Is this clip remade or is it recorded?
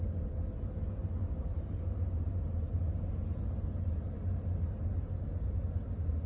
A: recorded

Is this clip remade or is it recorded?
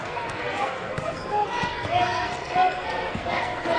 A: remade